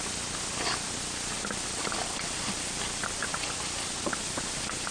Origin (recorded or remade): recorded